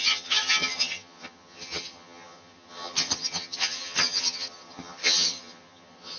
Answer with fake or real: fake